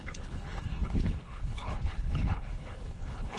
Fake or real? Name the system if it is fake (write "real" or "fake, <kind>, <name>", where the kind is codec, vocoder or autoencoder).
fake, codec, HILCodec